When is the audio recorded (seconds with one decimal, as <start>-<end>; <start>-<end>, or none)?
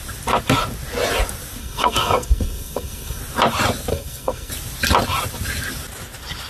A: 0.0-1.6; 3.2-3.9; 4.5-6.5